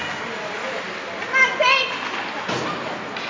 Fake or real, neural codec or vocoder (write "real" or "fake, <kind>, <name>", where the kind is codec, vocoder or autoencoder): real